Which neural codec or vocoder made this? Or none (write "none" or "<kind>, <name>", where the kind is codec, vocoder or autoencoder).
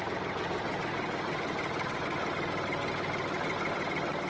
none